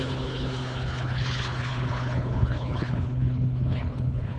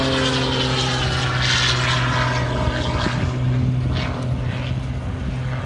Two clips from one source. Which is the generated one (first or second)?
first